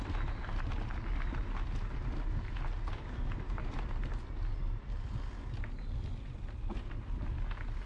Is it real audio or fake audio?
real